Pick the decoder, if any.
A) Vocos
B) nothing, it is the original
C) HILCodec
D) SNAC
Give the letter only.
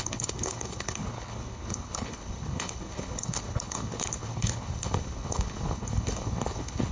C